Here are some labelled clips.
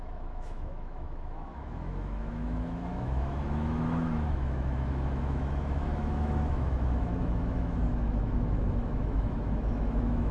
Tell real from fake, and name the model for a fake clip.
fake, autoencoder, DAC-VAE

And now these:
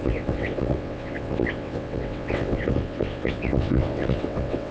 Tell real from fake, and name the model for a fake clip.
fake, vocoder, WaveNeXt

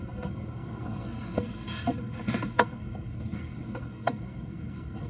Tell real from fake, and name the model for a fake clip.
fake, codec, SNAC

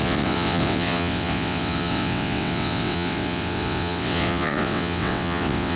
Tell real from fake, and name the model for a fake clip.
fake, vocoder, WaveNeXt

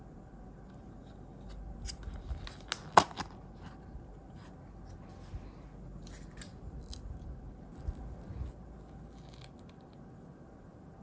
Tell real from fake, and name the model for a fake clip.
real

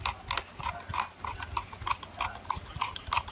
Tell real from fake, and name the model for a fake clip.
real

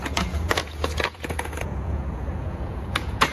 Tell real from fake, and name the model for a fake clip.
fake, vocoder, Vocos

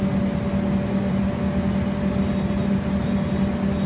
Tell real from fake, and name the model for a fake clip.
real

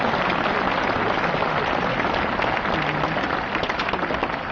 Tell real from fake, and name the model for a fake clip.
real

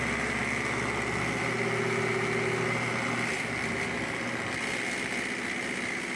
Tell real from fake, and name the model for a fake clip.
real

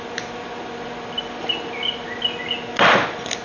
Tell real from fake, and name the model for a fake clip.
real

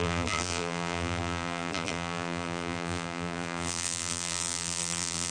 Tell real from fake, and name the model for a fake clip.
fake, vocoder, BigVGAN v2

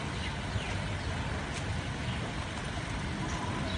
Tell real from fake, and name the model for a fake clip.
real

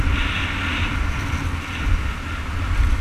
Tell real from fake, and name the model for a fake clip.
real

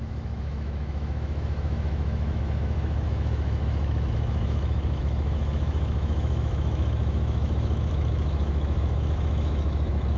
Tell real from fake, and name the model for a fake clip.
fake, autoencoder, DAC-VAE